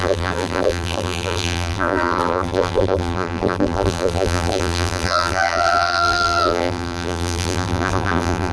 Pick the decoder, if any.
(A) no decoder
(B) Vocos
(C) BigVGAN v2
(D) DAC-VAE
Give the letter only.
C